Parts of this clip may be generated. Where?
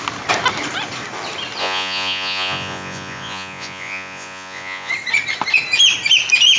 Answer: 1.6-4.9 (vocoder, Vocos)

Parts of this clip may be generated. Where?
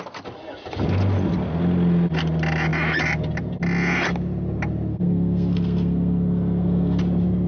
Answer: 4.9-7.0 (codec, SNAC)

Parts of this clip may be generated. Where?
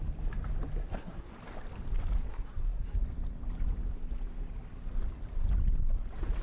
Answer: 0.8-1.3 (codec, SNAC); 2.3-3.0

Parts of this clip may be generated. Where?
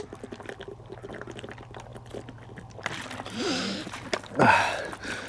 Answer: none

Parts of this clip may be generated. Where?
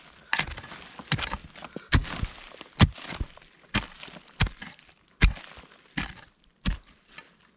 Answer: none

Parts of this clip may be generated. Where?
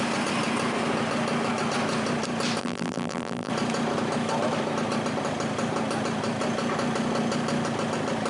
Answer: 2.6-3.5 (vocoder, BigVGAN v2)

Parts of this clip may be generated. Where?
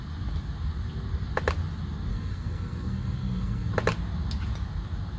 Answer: 2.1-3.7 (codec, SNAC)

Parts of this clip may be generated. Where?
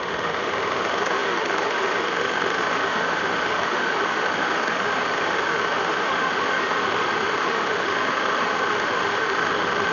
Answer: 0.0-9.9 (autoencoder, DAC-VAE)